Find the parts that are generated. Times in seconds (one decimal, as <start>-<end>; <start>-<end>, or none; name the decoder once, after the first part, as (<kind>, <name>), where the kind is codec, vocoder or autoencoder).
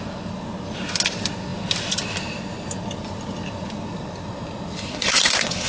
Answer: 4.9-5.7 (codec, SNAC)